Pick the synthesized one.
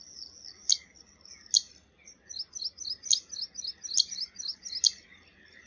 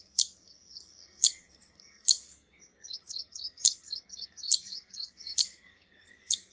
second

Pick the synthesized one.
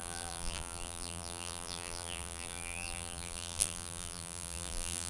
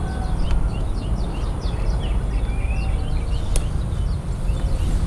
first